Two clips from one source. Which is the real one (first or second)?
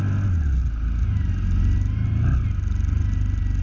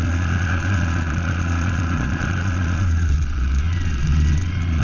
first